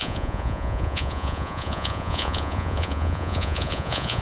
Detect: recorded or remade remade